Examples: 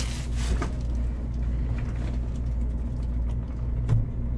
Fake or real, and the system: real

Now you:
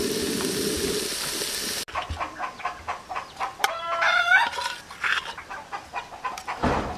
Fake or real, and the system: real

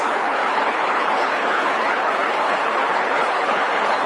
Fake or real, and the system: fake, codec, HILCodec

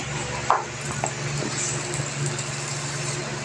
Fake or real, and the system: real